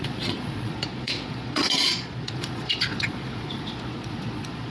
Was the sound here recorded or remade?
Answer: remade